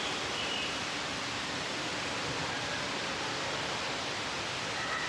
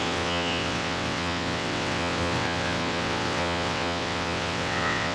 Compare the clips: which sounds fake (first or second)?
second